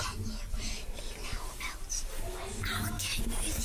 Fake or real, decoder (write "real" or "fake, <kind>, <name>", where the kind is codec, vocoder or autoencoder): real